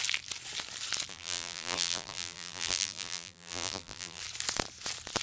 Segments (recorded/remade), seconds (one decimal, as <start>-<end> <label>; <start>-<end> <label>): 0.0-1.1 recorded; 1.1-4.2 remade; 4.2-5.2 recorded